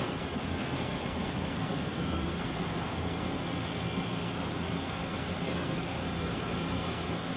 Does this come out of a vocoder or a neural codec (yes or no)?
yes